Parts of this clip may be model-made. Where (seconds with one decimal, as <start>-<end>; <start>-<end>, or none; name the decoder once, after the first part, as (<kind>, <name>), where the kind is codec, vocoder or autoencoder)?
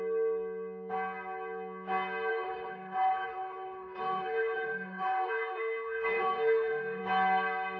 2.3-7.0 (autoencoder, DAC-VAE)